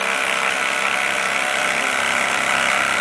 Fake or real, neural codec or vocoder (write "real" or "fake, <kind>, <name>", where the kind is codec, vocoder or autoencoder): real